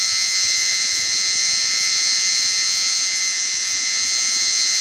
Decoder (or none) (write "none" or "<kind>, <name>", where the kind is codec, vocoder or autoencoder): vocoder, Vocos